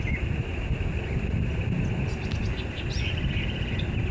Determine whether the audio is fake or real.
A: real